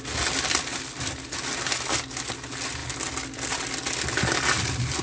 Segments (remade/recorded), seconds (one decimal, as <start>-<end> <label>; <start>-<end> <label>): 0.0-5.0 recorded

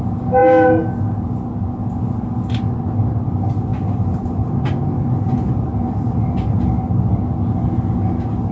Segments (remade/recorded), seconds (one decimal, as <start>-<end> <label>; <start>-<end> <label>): 0.0-8.5 recorded

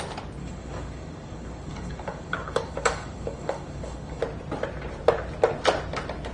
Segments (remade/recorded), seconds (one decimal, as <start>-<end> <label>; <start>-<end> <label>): 0.0-0.4 recorded; 0.4-4.2 remade; 4.2-6.3 recorded